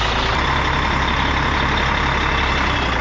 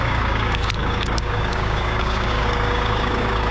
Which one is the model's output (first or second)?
second